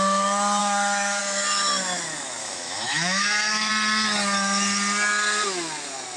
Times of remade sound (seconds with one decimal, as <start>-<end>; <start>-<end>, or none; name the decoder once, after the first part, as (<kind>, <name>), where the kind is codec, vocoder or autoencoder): 0.6-1.2 (autoencoder, DAC-VAE); 2.4-3.7

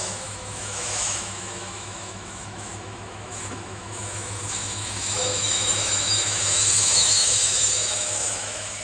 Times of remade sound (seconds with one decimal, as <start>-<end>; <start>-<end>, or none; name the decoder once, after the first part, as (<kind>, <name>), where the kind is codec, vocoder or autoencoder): 0.0-8.8 (autoencoder, DAC-VAE)

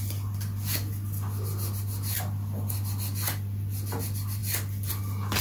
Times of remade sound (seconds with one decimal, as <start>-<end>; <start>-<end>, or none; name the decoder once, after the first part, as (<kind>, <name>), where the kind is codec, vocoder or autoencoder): none

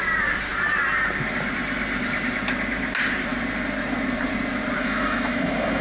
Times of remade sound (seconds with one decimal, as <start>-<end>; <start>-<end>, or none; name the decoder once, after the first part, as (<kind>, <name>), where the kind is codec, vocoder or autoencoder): 4.8-5.8 (autoencoder, DAC-VAE)

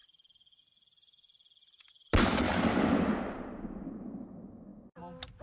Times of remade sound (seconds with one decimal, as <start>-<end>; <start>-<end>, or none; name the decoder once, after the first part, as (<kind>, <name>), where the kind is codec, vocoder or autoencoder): none

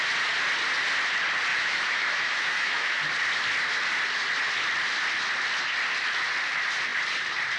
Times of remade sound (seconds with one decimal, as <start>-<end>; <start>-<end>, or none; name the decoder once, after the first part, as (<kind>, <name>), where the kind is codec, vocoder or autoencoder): 1.5-3.0 (autoencoder, DAC-VAE)

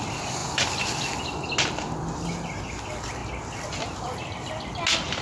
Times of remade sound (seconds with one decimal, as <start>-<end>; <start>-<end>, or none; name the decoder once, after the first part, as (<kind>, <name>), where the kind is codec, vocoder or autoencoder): none